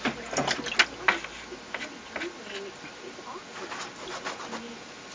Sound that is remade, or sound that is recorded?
recorded